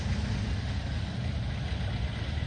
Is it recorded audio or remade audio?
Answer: recorded